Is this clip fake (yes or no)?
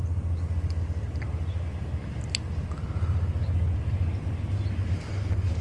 no